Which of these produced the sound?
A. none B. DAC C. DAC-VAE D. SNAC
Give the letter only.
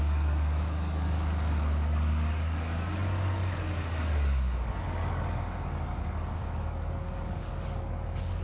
B